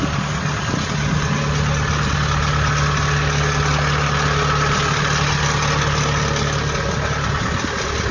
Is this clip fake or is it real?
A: real